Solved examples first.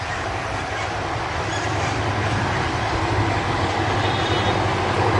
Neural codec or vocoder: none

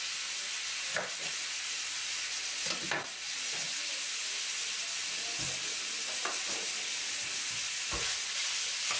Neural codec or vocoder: none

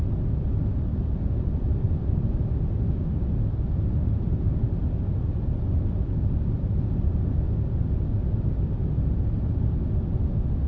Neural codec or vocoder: none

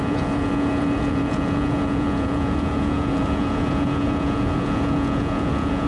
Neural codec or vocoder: vocoder, Vocos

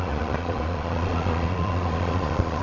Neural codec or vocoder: vocoder, Vocos